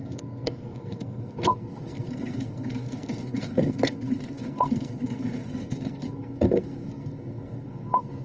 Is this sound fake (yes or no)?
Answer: yes